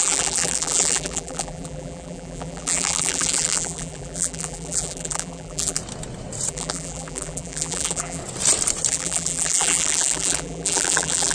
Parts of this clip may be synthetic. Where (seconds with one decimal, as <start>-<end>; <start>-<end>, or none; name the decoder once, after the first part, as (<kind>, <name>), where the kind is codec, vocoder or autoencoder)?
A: 0.0-5.8 (vocoder, BigVGAN v2); 6.5-8.2; 8.9-11.3